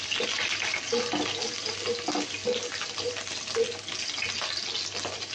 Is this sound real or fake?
real